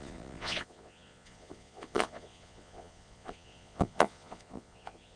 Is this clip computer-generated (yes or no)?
yes